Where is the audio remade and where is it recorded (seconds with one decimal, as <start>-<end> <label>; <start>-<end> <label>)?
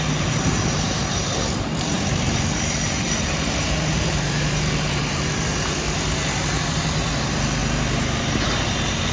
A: 0.0-7.6 remade; 7.6-8.2 recorded; 8.2-9.1 remade